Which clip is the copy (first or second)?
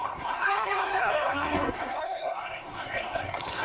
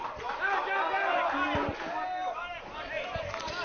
first